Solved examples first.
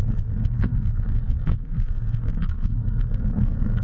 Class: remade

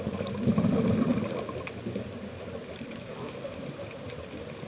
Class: recorded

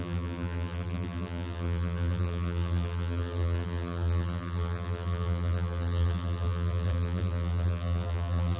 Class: remade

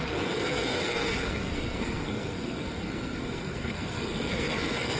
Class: remade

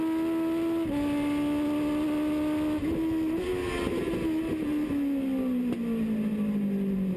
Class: recorded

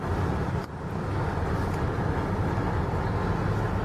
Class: recorded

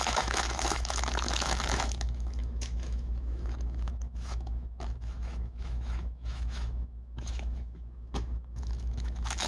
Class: remade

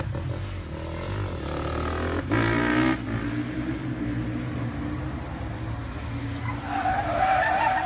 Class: recorded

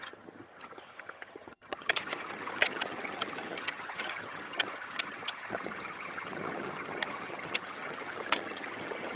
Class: remade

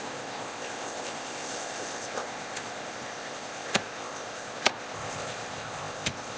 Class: remade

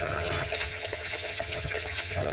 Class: remade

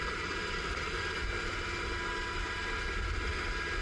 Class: recorded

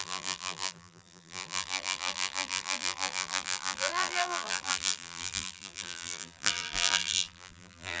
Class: remade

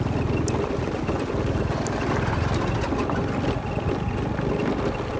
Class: recorded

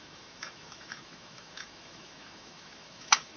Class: remade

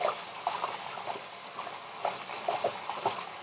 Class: recorded